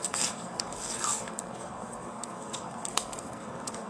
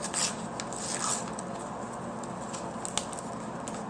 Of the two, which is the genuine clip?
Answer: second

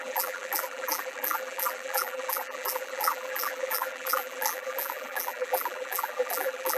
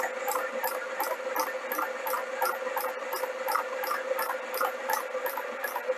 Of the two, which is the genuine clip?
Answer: second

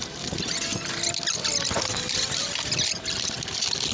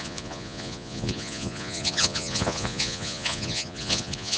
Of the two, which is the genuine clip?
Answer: first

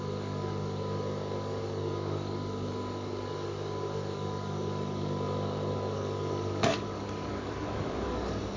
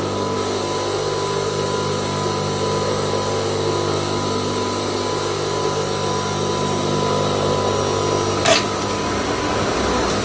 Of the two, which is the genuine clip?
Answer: second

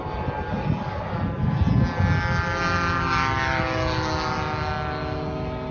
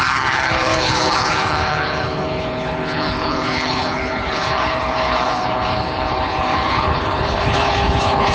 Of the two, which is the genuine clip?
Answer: first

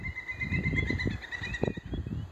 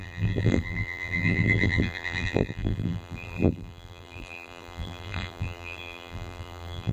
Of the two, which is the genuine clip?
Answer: first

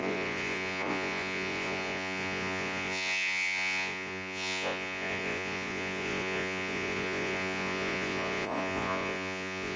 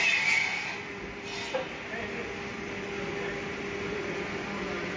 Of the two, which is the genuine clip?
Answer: second